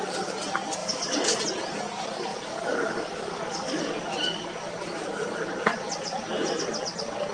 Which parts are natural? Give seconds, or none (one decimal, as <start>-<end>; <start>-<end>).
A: 0.0-0.8; 1.4-2.3; 3.8-7.3